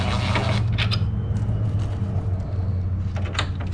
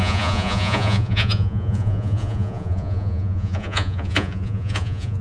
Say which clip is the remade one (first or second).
second